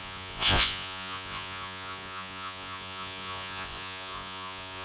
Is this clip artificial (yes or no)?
yes